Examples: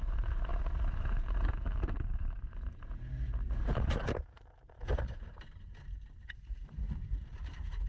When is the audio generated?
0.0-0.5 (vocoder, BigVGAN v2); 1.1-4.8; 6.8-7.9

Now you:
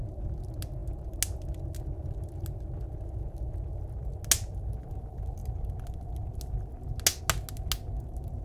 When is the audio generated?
none

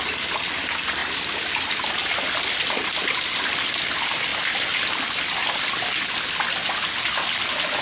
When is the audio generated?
1.0-1.7 (vocoder, BigVGAN v2)

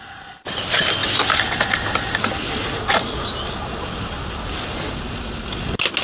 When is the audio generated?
none